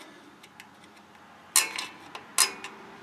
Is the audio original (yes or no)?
yes